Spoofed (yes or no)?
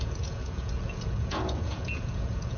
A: yes